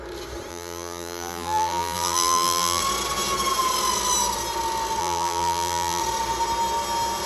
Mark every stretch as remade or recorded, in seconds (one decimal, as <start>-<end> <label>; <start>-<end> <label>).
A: 0.0-0.5 recorded; 0.5-2.8 remade; 2.8-5.0 recorded; 5.0-6.0 remade; 6.0-7.3 recorded